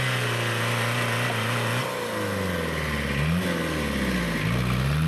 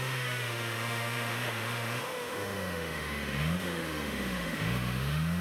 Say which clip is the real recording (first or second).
first